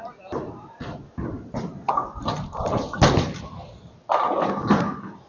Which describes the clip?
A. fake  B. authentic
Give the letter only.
B